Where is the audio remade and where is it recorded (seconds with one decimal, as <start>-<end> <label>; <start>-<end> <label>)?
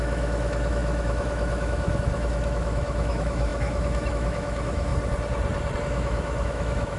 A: 0.0-4.9 remade; 4.9-5.8 recorded; 5.8-7.0 remade